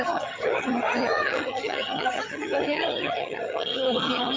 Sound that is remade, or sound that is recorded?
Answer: remade